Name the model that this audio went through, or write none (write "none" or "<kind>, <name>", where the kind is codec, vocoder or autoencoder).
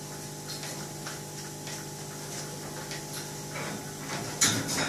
none